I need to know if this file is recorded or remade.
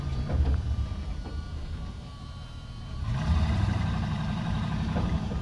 remade